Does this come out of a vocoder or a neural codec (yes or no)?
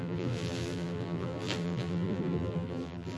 yes